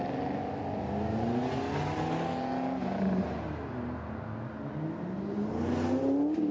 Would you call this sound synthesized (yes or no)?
no